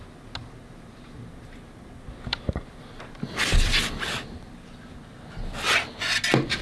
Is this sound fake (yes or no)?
no